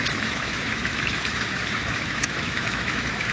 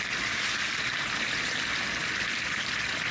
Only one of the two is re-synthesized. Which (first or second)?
first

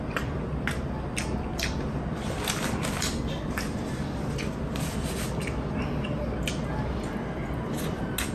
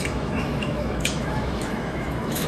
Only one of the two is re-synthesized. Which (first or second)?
second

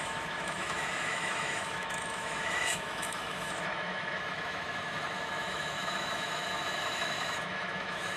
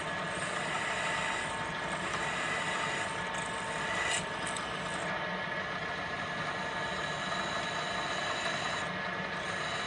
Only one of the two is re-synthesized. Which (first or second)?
first